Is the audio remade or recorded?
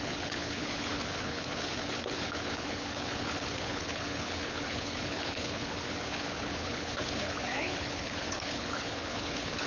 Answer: remade